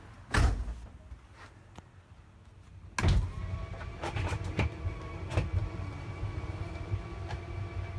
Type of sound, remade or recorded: recorded